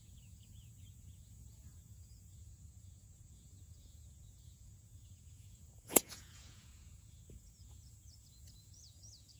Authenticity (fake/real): fake